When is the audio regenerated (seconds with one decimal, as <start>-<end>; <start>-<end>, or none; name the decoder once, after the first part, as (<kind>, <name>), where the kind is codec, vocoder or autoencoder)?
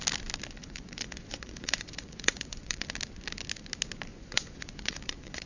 0.6-2.9 (vocoder, Vocos); 4.1-5.5